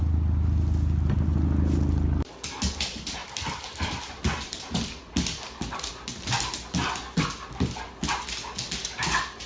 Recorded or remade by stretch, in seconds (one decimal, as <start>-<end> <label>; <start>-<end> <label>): 0.0-3.2 recorded; 3.2-5.9 remade; 5.9-9.5 recorded